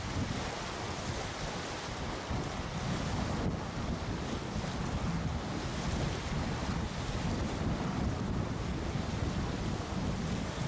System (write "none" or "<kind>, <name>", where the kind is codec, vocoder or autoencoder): none